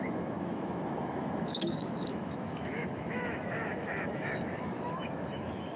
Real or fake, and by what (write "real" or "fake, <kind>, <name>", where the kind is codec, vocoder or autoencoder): fake, autoencoder, DAC-VAE